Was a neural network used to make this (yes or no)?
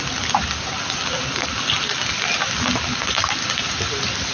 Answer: no